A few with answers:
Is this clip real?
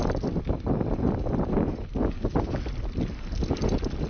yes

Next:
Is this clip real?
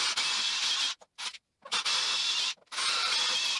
yes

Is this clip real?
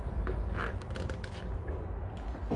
yes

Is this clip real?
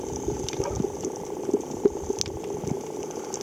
yes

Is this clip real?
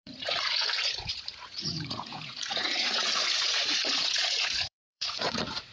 no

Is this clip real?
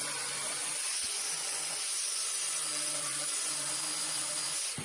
no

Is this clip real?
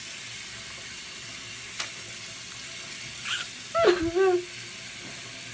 yes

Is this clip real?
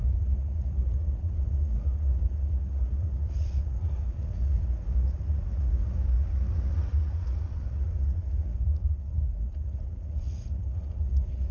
no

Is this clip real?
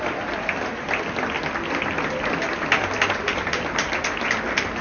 yes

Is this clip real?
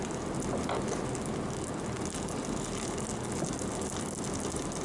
yes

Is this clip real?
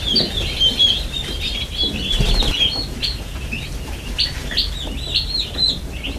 yes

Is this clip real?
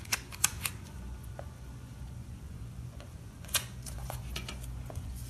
no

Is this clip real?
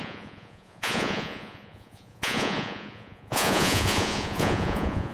no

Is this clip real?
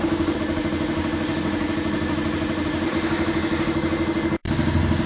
yes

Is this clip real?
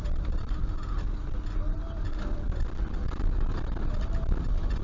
yes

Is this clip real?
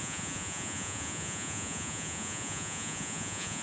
no